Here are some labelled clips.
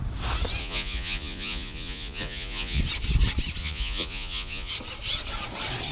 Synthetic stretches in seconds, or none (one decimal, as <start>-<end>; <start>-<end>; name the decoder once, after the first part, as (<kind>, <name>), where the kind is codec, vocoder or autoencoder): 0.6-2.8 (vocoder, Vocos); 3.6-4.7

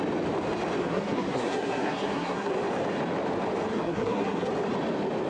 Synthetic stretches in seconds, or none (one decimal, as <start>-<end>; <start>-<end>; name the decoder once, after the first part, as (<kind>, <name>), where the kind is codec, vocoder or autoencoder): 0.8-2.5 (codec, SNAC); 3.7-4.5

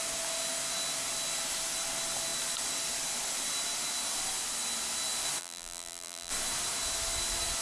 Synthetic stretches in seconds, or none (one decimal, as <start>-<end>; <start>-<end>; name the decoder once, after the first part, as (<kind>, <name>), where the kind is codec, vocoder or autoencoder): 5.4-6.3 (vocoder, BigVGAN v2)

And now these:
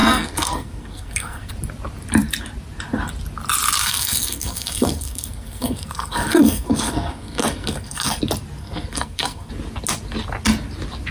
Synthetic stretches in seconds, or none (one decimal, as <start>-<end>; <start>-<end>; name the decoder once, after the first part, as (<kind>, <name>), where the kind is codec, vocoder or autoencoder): 0.0-1.5 (codec, SNAC); 3.8-8.2; 8.6-9.5

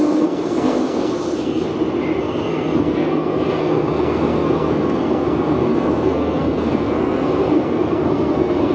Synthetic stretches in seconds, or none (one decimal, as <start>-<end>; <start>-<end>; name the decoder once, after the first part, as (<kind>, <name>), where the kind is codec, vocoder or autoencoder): 0.0-1.7 (codec, SNAC); 2.2-8.7

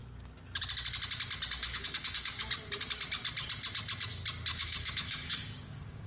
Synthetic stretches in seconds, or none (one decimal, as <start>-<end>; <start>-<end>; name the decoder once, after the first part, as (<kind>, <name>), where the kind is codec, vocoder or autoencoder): 1.6-2.5 (codec, DAC); 4.5-6.1